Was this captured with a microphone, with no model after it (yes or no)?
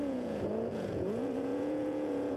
no